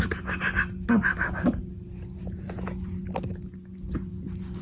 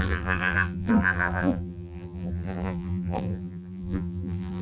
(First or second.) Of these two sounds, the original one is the first